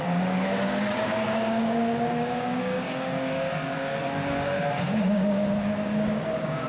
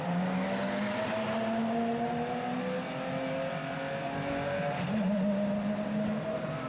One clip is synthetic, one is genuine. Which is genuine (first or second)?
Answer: second